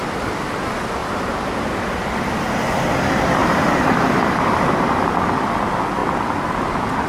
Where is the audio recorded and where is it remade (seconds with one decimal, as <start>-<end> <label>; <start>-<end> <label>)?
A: 0.0-1.0 recorded; 1.0-2.5 remade; 2.5-3.4 recorded; 3.4-5.3 remade; 5.3-7.1 recorded